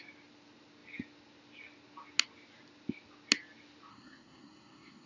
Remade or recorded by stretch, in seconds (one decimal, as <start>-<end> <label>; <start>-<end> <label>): 0.0-3.9 recorded; 3.9-5.1 remade